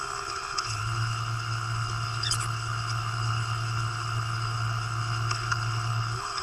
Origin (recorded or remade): remade